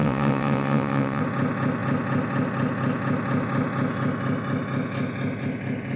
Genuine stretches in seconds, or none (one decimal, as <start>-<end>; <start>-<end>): 1.2-6.0

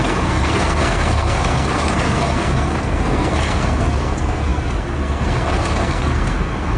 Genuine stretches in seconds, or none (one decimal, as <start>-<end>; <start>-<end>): none

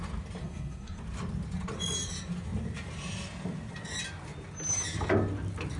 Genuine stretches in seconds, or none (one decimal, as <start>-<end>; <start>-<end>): 0.0-0.4; 1.0-5.8

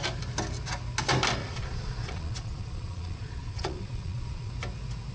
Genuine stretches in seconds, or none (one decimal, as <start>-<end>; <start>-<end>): 0.0-1.4; 4.5-5.1

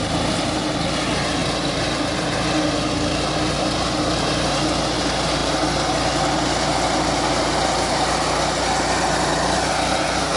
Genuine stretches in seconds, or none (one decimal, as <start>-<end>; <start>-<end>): 0.0-10.4